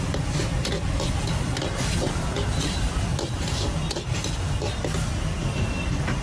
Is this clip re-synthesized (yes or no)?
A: no